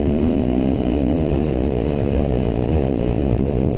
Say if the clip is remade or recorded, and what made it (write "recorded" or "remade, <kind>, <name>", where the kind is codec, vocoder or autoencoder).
remade, vocoder, Vocos